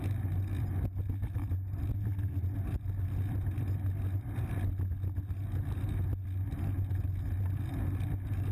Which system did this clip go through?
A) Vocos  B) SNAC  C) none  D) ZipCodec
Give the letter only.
C